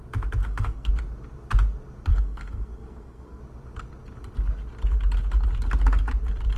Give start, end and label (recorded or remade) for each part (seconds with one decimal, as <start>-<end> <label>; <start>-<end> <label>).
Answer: 0.0-0.4 recorded; 0.4-0.9 remade; 0.9-2.1 recorded; 2.1-3.4 remade; 3.4-6.6 recorded